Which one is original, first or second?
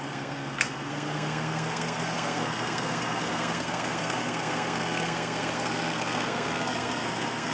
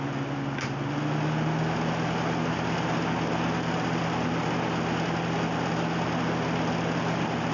second